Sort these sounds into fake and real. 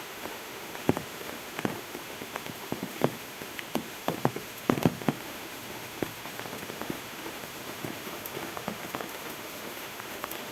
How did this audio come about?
fake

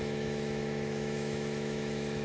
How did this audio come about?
fake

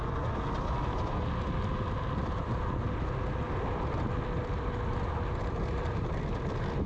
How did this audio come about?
real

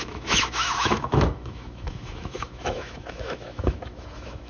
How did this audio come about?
fake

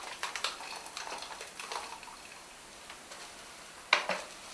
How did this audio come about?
real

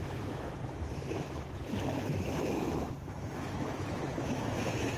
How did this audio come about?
fake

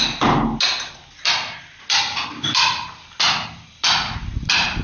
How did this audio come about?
real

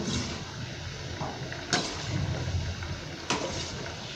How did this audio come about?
real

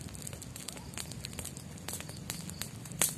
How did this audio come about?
real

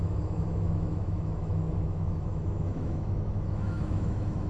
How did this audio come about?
fake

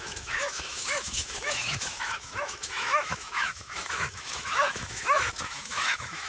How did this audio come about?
fake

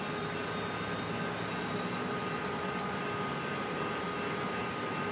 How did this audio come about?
real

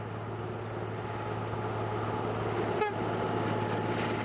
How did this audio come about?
real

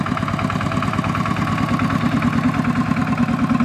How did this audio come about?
real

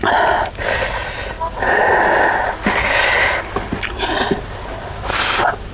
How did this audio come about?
real